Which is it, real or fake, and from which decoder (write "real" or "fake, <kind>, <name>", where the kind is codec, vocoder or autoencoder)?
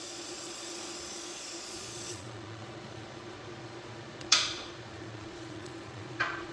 fake, vocoder, Vocos